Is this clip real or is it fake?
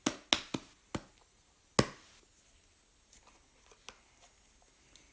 real